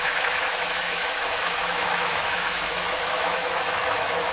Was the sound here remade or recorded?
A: remade